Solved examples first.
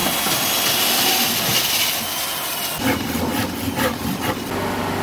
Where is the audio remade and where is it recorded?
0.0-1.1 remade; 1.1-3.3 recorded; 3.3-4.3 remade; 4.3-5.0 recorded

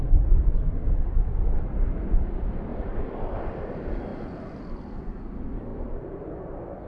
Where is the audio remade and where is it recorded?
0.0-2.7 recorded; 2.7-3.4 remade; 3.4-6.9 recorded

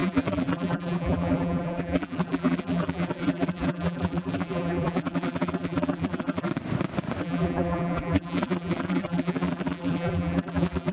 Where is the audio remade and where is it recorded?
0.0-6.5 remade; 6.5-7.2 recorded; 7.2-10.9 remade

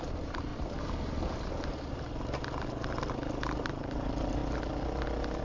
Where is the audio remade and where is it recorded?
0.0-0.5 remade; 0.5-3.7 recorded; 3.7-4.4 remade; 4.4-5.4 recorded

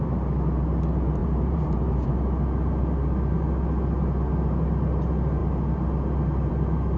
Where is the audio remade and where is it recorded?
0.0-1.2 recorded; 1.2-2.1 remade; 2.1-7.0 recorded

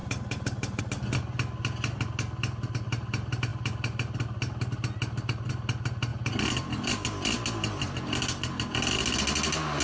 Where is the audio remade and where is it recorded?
0.0-0.8 remade; 0.8-9.8 recorded